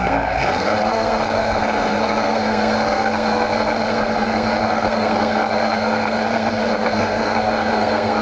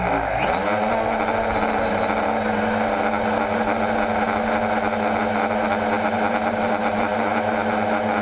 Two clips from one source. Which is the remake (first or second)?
first